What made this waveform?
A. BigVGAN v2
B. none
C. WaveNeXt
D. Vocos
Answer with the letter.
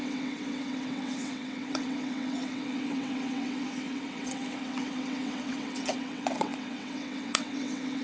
C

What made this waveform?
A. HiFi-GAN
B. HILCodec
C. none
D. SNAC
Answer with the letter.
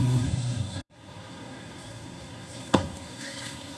D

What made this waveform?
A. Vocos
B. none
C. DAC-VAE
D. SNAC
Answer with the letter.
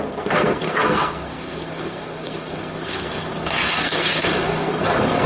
D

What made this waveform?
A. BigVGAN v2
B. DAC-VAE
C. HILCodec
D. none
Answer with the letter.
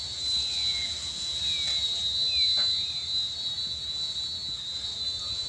D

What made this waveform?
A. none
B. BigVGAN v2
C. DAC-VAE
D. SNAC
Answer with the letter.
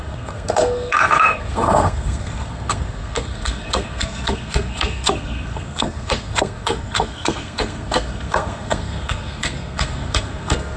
D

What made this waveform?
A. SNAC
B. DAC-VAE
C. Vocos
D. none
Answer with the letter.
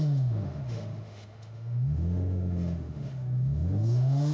B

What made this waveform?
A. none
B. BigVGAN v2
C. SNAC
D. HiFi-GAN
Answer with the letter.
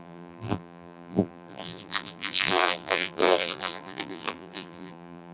B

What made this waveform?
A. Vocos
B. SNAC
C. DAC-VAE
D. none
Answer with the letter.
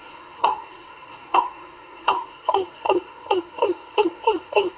B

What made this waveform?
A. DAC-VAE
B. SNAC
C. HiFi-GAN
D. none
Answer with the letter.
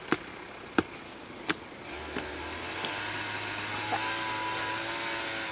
D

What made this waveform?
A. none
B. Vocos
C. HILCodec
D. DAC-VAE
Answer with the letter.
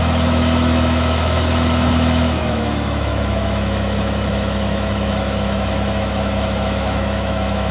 D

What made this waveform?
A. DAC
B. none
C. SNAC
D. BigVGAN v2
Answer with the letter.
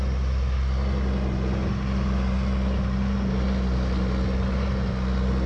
B